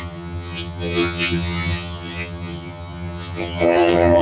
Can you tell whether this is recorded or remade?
remade